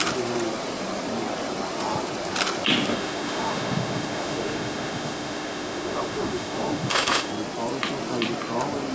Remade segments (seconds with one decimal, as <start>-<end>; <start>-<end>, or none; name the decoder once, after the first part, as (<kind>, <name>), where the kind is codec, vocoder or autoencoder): 2.9-7.3 (autoencoder, DAC-VAE)